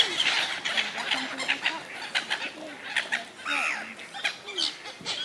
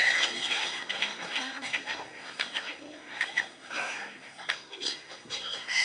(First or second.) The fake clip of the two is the second